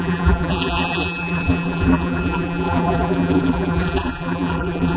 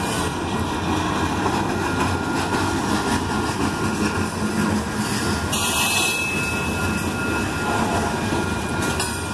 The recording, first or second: second